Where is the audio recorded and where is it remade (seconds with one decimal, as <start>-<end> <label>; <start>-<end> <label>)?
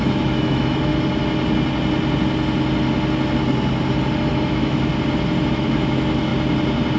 0.0-0.9 remade; 0.9-4.3 recorded; 4.3-4.9 remade; 4.9-5.5 recorded; 5.5-6.3 remade; 6.3-7.0 recorded